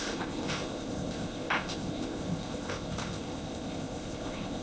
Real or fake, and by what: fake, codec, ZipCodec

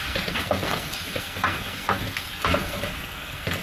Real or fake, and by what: fake, codec, SNAC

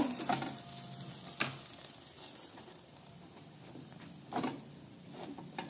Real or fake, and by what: real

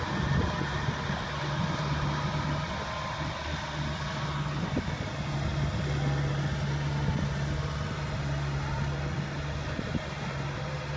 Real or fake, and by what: real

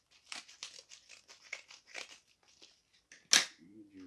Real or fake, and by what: real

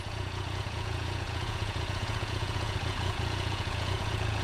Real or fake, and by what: fake, vocoder, Vocos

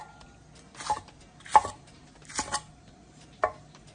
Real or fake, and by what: real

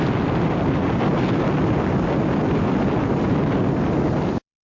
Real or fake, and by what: real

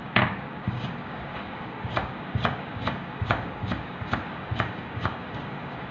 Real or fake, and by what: fake, codec, DAC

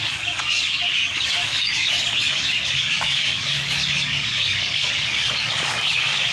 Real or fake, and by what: fake, codec, DAC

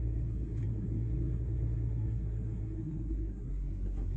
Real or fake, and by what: fake, codec, SNAC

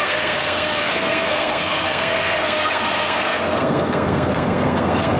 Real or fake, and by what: fake, codec, SNAC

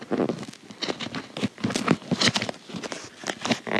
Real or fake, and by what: real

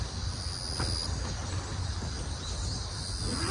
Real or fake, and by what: real